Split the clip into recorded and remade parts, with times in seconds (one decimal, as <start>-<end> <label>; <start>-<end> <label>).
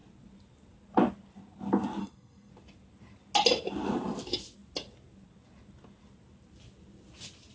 0.0-2.0 recorded; 2.0-2.5 remade; 2.5-7.5 recorded